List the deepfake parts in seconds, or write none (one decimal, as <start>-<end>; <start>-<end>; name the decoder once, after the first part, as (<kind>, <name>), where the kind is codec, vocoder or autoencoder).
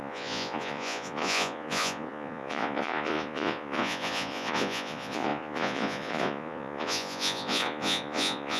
0.0-8.6 (vocoder, Vocos)